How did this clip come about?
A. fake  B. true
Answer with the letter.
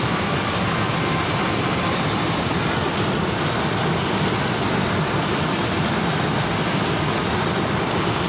B